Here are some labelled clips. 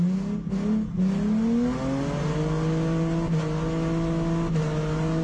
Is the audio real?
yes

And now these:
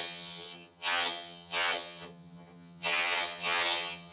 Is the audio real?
no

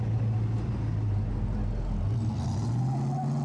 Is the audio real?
yes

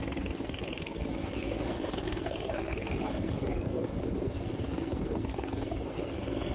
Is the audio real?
no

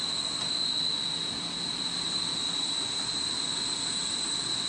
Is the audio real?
yes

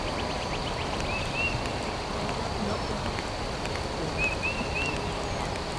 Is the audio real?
yes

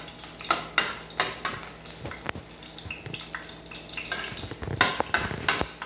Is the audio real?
yes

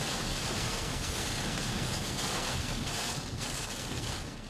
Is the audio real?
no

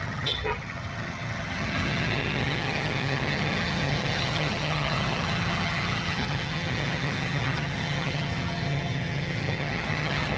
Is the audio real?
no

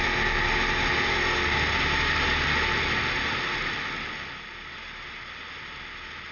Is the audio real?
yes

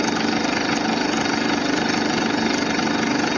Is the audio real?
yes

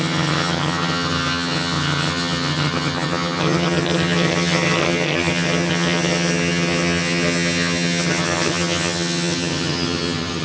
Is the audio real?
no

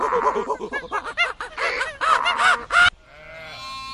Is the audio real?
yes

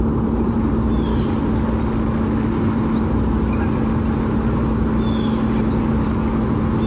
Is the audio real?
yes